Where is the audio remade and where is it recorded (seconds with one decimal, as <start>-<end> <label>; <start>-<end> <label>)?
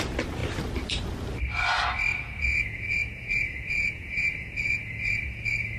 0.0-2.1 recorded; 2.1-5.8 remade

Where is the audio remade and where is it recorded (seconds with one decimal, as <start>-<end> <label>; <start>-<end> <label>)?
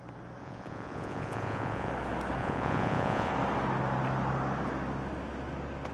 0.0-0.4 recorded; 0.4-1.9 remade; 1.9-2.4 recorded; 2.4-3.3 remade; 3.3-5.9 recorded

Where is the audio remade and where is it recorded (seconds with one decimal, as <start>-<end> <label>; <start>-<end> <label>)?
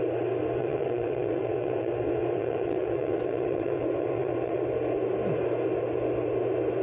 0.0-0.6 recorded; 0.6-4.7 remade; 4.7-6.8 recorded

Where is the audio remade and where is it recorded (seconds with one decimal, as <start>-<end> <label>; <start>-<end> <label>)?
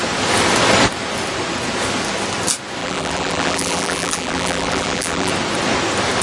0.0-2.8 recorded; 2.8-5.3 remade; 5.3-6.2 recorded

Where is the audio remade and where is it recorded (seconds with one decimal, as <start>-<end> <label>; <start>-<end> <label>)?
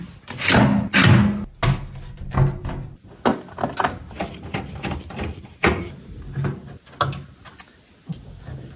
0.0-8.8 recorded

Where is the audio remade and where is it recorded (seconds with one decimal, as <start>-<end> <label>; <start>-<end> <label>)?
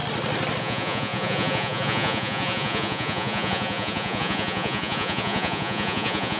0.0-0.6 recorded; 0.6-6.4 remade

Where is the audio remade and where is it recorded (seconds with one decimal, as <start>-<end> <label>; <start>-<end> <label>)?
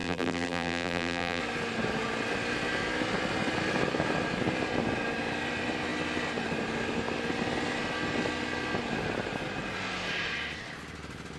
0.0-1.4 remade; 1.4-11.4 recorded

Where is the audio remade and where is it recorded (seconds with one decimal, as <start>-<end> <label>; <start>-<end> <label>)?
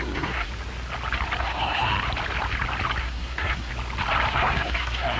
0.0-0.5 remade; 0.5-1.4 recorded; 1.4-1.9 remade; 1.9-3.0 recorded; 3.0-3.7 remade; 3.7-4.3 recorded; 4.3-5.2 remade